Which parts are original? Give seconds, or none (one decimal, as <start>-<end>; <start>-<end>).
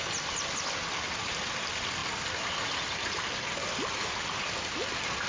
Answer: 0.0-5.3